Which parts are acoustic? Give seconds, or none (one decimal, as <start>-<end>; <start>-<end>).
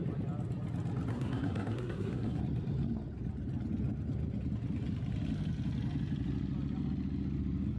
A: 0.0-1.1; 2.4-7.8